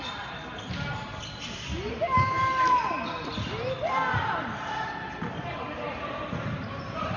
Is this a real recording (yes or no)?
yes